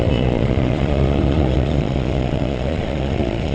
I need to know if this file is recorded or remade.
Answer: remade